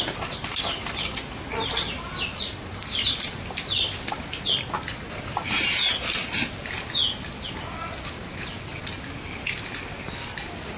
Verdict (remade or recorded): recorded